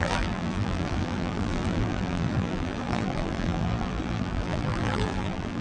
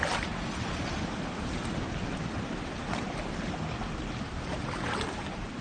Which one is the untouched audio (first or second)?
second